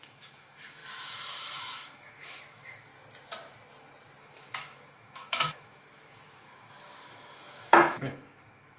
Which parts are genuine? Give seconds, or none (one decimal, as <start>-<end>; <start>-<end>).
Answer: 2.9-4.2